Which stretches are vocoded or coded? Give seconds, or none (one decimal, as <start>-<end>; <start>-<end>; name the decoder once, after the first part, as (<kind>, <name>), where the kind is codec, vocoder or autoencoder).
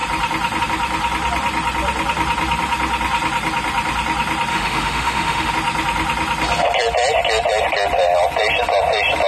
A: 4.5-5.5 (autoencoder, DAC-VAE)